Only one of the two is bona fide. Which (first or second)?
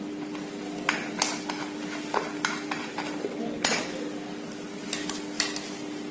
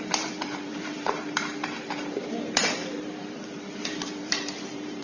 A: first